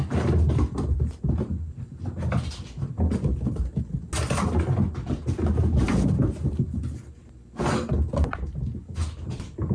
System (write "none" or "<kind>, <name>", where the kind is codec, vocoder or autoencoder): none